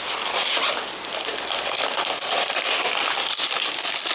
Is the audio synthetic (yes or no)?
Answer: no